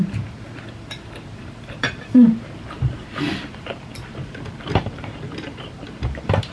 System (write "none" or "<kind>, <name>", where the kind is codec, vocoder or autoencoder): vocoder, BigVGAN v2